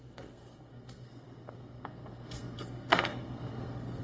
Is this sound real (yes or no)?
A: no